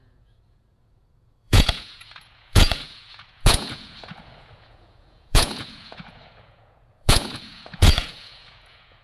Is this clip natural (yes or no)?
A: no